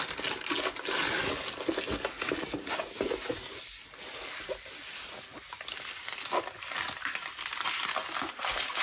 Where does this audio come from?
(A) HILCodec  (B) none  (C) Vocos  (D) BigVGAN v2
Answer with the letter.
B